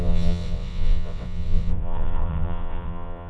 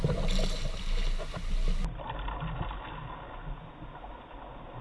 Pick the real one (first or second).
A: second